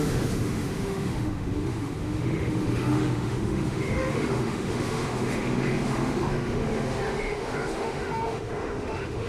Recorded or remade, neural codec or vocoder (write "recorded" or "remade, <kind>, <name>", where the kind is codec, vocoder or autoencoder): remade, autoencoder, DAC-VAE